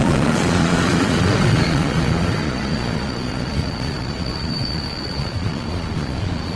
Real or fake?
fake